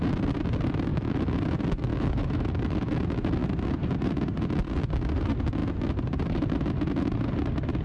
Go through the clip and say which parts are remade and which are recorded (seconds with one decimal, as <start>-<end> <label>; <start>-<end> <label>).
0.0-0.9 recorded; 0.9-1.4 remade; 1.4-1.9 recorded; 1.9-3.0 remade; 3.0-7.8 recorded